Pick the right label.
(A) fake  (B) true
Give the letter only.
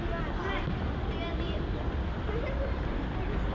B